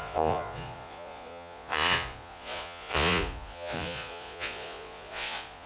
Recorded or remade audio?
remade